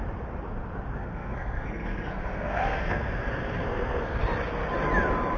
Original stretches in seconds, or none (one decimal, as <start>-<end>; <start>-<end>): 0.0-1.0; 4.2-5.4